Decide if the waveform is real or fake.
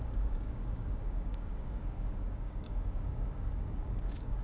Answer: fake